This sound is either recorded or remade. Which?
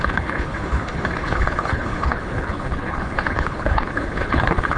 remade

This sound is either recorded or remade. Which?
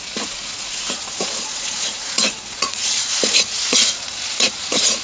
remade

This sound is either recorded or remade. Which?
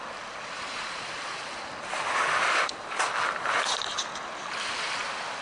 recorded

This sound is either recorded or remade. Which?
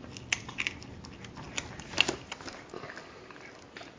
recorded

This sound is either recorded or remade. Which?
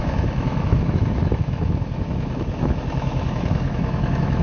remade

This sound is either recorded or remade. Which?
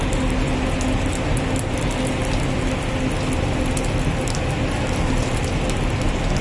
recorded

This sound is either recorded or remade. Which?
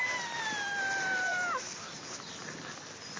recorded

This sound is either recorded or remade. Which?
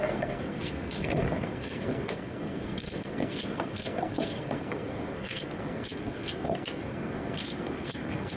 remade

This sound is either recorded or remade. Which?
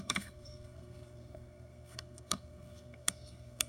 remade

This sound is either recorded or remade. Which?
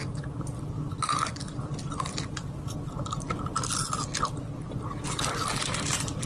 recorded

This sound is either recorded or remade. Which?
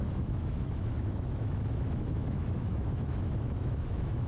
remade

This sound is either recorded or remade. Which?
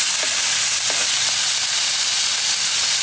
recorded